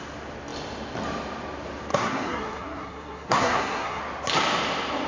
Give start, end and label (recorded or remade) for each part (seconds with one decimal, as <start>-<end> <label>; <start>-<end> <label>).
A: 0.0-1.9 recorded; 1.9-4.0 remade; 4.0-5.1 recorded